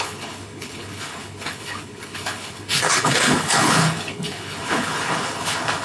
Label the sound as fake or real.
fake